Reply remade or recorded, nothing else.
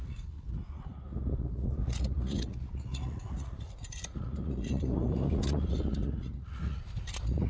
remade